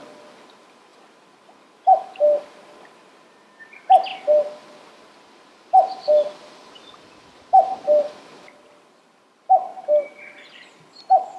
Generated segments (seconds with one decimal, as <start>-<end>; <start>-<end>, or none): none